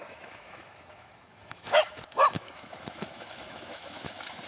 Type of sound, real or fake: fake